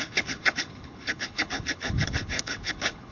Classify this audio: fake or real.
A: fake